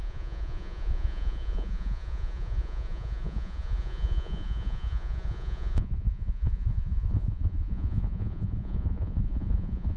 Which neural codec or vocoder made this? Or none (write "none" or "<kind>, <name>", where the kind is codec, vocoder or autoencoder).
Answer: vocoder, Vocos